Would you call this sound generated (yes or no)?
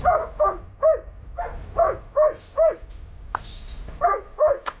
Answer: no